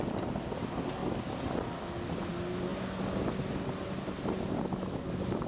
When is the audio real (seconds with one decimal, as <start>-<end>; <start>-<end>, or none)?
0.0-5.5